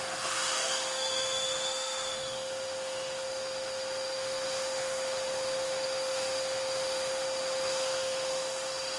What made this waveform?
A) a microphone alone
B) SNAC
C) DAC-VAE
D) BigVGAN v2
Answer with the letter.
C